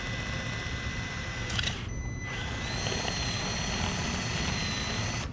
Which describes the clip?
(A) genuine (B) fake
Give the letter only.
A